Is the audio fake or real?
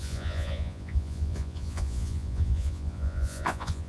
fake